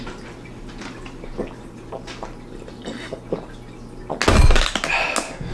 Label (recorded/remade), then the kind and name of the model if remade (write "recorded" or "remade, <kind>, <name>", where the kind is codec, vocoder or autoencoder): recorded